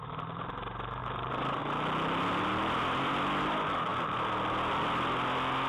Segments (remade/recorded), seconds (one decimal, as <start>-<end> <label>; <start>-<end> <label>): 0.0-1.0 recorded; 1.0-1.6 remade; 1.6-5.7 recorded